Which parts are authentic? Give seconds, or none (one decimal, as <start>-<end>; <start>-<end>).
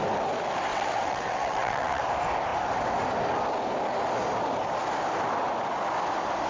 0.0-0.7; 2.0-6.5